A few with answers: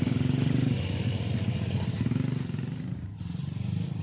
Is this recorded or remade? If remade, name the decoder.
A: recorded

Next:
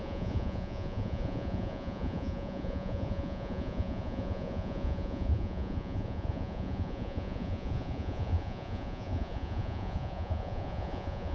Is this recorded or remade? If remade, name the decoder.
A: remade, vocoder, Vocos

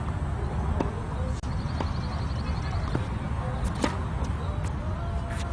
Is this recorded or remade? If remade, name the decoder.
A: recorded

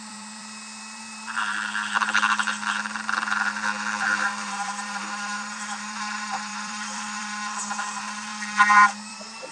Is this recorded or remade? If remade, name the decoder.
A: remade, vocoder, BigVGAN v2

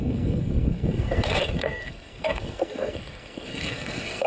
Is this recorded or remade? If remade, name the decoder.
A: remade, codec, SNAC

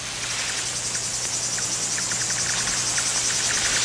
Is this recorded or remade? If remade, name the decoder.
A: recorded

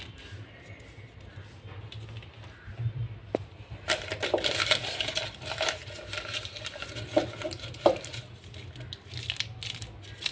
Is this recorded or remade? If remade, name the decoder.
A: recorded